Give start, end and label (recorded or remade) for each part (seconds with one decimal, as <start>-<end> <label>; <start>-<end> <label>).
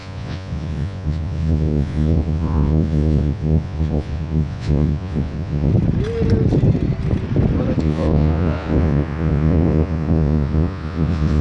0.0-5.7 remade; 5.7-7.8 recorded; 7.8-11.4 remade